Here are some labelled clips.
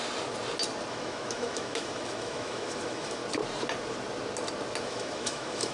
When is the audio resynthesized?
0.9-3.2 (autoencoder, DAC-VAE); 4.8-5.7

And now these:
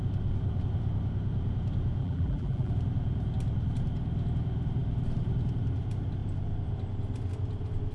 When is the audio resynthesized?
2.0-2.7 (vocoder, BigVGAN v2)

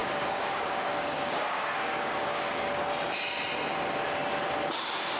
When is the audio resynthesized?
0.0-2.7 (codec, DAC)

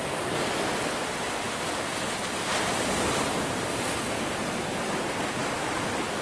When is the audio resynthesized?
none

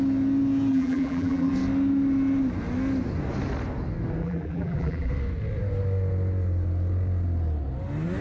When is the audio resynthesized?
0.7-1.5 (vocoder, BigVGAN v2); 4.2-5.1